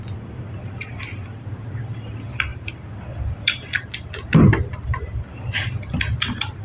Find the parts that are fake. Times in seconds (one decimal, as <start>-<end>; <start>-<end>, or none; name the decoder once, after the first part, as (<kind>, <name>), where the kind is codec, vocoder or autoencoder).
0.0-6.6 (vocoder, BigVGAN v2)